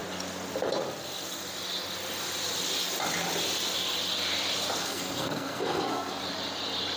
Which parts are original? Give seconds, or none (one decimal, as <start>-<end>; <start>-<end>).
0.0-4.8; 6.2-7.0